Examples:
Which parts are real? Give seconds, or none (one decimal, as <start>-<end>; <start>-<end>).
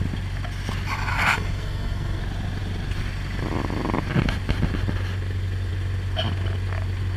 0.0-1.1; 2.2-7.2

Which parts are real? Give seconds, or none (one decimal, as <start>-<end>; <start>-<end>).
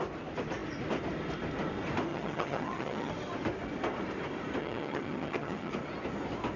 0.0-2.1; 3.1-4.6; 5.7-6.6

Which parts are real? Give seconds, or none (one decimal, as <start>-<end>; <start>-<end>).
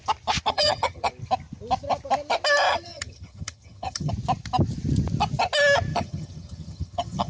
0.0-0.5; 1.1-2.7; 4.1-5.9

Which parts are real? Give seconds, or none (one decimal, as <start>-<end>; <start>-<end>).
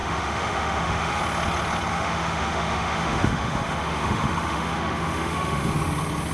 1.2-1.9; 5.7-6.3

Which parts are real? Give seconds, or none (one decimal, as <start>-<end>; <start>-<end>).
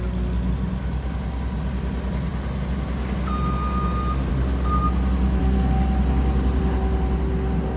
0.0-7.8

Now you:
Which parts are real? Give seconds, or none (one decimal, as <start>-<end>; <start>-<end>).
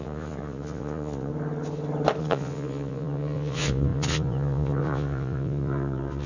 1.3-2.2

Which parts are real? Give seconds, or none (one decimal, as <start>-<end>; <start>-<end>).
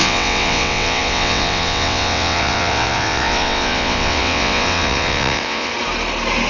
5.7-6.5